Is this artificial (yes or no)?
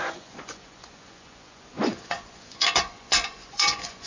yes